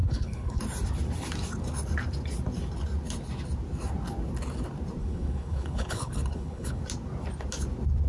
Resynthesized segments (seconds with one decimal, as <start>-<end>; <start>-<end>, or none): 0.0-0.6; 5.0-6.8

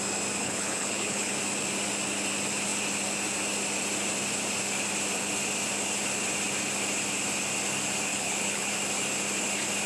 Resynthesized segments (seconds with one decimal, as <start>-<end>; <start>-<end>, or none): 0.4-1.3; 8.1-8.7

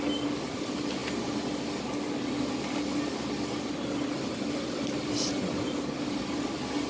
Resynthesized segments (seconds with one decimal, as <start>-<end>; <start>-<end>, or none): none

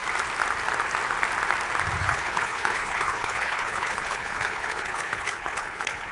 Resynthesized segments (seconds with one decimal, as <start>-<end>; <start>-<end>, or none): 2.0-6.1

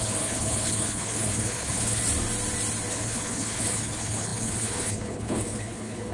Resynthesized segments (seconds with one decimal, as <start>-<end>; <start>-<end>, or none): 0.0-2.0; 2.9-6.1

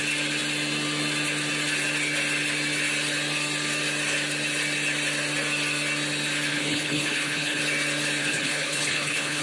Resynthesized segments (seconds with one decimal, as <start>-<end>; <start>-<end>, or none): 6.5-7.6; 8.2-9.4

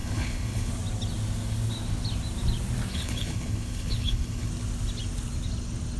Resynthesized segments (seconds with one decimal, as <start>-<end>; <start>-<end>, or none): 0.0-0.7; 2.9-4.5